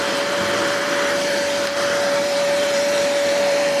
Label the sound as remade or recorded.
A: remade